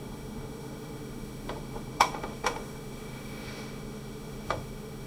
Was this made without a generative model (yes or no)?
no